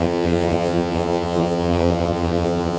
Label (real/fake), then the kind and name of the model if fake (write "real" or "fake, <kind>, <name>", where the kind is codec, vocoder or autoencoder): fake, vocoder, HiFi-GAN